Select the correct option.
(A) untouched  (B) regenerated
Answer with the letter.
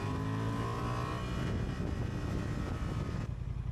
A